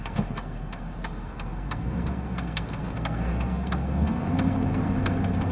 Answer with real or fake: fake